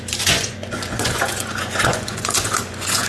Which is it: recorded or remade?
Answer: remade